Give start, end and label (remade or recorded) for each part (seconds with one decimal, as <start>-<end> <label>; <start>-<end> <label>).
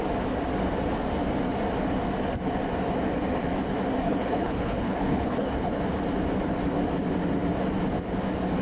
0.0-4.0 recorded; 4.0-5.8 remade; 5.8-8.6 recorded